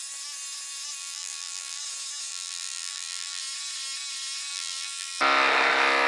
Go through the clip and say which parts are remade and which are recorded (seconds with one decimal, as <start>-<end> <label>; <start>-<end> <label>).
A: 0.0-1.0 recorded; 1.0-1.8 remade; 1.8-2.3 recorded; 2.3-3.4 remade; 3.4-4.5 recorded; 4.5-5.2 remade; 5.2-6.1 recorded